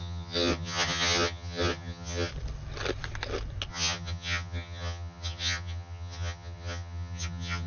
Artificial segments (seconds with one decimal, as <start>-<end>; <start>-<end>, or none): 0.0-2.3; 3.7-7.7